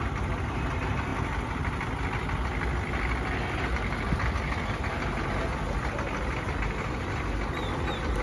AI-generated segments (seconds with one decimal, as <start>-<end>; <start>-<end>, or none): none